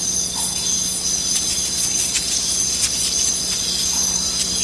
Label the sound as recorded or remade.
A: recorded